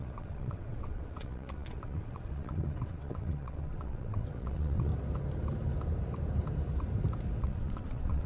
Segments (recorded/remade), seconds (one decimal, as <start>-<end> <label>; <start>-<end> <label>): 0.0-4.9 remade; 4.9-7.4 recorded; 7.4-8.3 remade